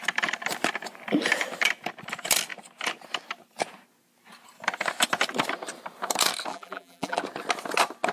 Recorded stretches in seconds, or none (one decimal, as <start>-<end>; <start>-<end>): 0.0-6.5; 7.2-8.1